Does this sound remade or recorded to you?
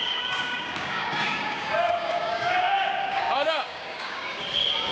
remade